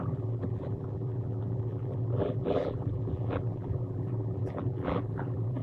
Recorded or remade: remade